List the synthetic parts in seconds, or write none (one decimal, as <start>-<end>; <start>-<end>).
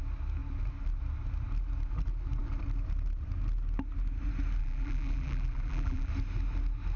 4.6-6.1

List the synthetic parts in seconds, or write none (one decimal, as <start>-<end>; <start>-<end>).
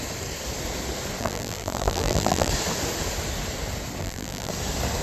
1.2-2.5; 4.0-4.5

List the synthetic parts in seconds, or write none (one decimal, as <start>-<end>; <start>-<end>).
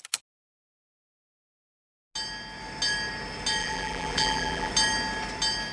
3.6-4.7